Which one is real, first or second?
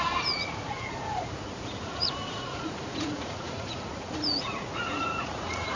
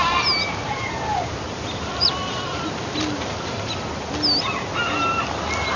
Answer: second